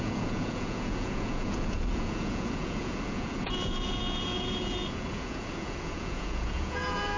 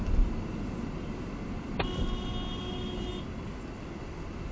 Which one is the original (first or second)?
second